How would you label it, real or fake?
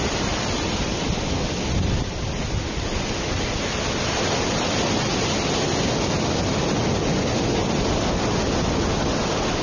real